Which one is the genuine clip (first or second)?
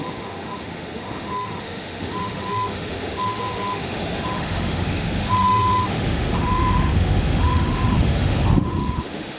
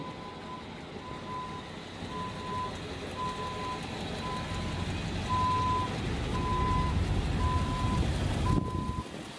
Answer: second